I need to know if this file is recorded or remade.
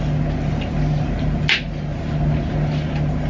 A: recorded